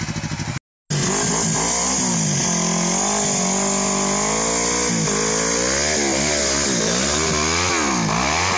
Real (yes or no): yes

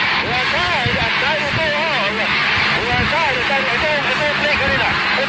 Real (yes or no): yes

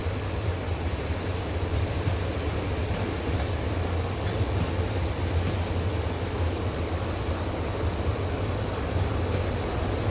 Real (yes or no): yes